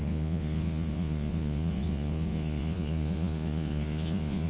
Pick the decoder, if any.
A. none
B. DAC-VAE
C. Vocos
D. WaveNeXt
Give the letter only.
C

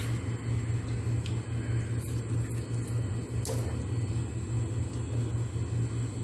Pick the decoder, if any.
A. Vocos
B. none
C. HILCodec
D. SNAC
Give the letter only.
B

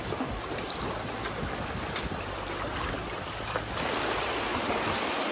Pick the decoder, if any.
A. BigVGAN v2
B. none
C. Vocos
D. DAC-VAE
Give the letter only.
B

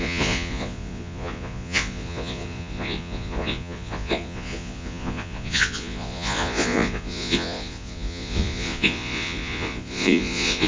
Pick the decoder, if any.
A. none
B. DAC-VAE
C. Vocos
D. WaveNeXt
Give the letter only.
C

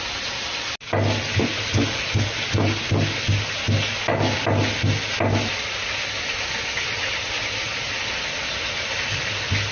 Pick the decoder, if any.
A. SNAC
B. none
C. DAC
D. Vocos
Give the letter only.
B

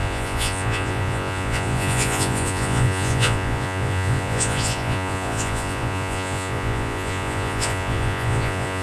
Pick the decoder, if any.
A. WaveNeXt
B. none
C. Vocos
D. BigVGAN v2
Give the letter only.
C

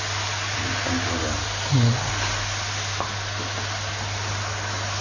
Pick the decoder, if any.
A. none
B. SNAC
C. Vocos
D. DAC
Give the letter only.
A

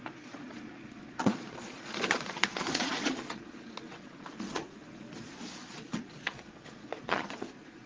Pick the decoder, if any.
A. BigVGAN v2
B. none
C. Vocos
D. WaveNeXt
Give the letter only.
C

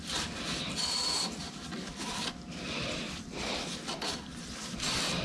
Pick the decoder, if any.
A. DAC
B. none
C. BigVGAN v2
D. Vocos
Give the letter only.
B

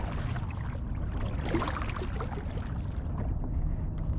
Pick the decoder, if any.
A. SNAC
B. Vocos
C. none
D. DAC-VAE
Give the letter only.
C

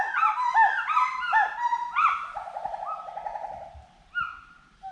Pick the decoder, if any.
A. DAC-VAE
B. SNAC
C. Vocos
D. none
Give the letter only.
D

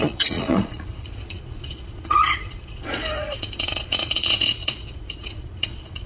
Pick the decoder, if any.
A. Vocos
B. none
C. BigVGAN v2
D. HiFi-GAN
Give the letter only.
A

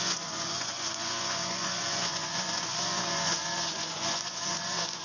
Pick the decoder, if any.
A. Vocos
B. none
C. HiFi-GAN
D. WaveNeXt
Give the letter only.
A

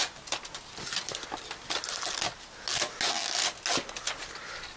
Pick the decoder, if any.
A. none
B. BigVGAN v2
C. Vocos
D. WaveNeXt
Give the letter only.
A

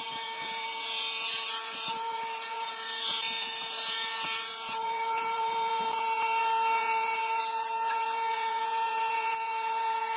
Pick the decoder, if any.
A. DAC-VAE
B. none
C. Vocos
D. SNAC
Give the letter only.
C